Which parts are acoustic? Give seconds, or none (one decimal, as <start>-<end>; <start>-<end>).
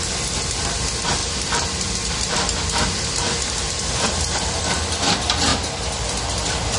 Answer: 0.0-1.2; 4.6-5.5; 6.2-6.8